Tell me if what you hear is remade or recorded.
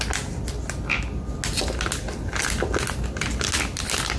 recorded